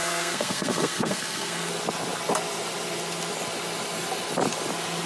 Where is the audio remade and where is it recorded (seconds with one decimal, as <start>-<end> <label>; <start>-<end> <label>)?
0.0-1.7 remade; 1.7-5.1 recorded